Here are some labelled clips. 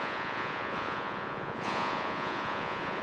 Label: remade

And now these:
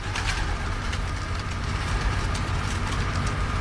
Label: recorded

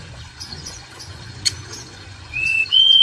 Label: remade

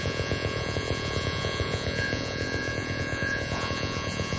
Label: remade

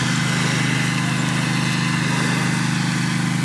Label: recorded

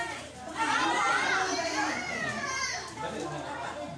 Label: recorded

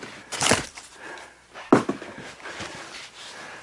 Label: recorded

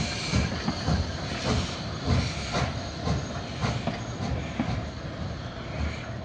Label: recorded